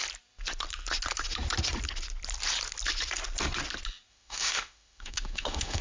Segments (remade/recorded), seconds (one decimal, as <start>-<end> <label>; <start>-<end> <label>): 0.0-4.1 recorded; 4.1-5.8 remade